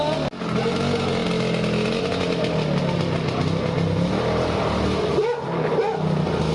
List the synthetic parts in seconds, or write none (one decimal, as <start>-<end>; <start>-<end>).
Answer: none